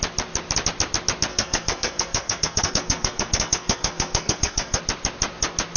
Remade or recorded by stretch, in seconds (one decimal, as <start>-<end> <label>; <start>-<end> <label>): 0.0-1.3 recorded; 1.3-4.8 remade; 4.8-5.8 recorded